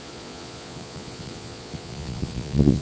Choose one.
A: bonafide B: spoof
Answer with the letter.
B